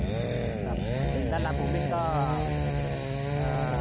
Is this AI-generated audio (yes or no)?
no